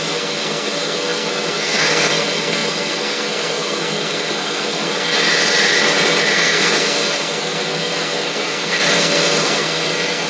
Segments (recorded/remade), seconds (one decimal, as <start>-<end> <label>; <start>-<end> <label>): 0.0-5.3 remade; 5.3-6.3 recorded; 6.3-10.3 remade